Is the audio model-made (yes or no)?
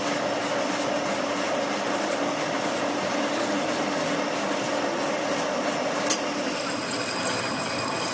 no